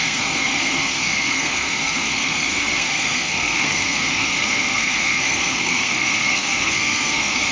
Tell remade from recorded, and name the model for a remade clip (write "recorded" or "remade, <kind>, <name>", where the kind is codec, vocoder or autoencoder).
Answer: remade, codec, SNAC